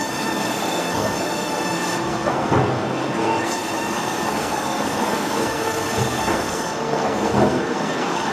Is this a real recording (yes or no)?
no